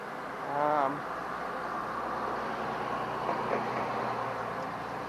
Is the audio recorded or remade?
recorded